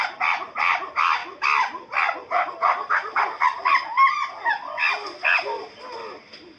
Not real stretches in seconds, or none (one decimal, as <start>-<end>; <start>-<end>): none